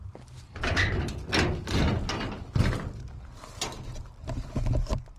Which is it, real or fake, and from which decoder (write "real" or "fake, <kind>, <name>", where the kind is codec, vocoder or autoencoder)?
real